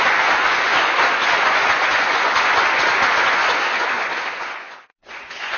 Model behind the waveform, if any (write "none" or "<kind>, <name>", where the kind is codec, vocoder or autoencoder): vocoder, Vocos